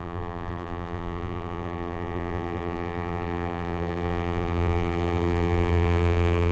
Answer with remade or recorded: remade